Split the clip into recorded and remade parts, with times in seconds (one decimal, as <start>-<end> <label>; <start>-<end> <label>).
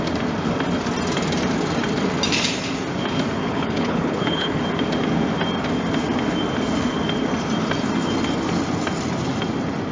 0.0-3.4 recorded; 3.4-4.6 remade; 4.6-9.9 recorded